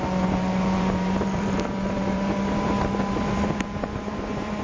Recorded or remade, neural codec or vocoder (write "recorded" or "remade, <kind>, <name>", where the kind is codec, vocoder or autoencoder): remade, vocoder, BigVGAN v2